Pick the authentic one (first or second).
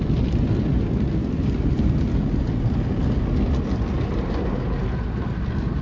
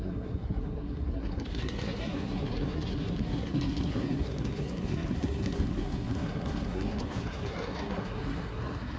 first